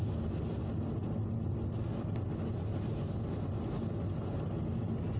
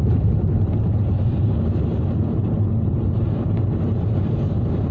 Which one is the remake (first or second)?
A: second